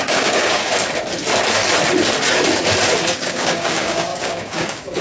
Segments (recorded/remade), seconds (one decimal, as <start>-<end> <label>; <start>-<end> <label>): 0.0-0.7 remade; 0.7-3.1 recorded; 3.1-5.0 remade